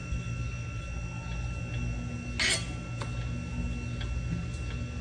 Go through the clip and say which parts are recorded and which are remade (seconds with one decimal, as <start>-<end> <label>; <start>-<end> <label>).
0.0-5.0 recorded